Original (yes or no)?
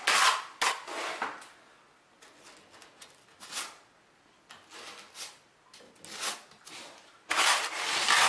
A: yes